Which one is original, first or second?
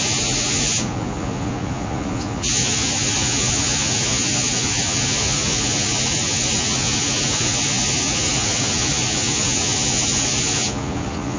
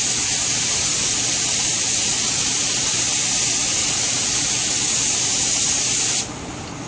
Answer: second